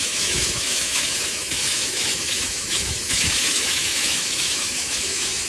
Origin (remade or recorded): remade